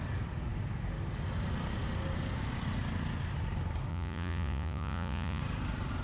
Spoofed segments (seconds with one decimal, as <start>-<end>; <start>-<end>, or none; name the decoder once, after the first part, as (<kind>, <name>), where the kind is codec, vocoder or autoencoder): 3.9-5.4 (vocoder, Vocos)